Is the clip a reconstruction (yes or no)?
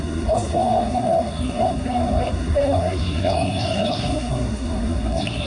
yes